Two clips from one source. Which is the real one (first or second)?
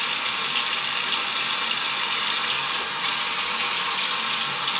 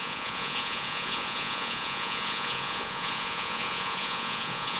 first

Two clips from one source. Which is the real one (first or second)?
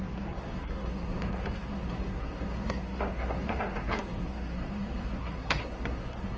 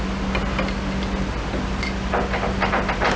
second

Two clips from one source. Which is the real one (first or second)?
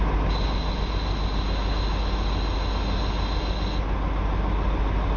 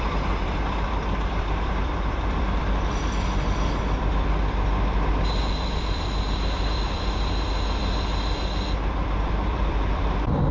first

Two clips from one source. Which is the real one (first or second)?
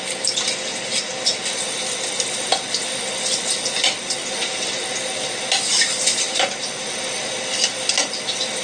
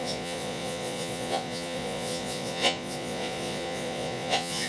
first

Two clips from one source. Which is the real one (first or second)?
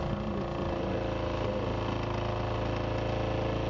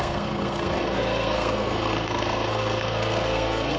first